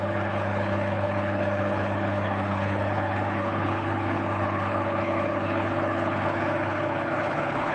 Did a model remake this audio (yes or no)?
yes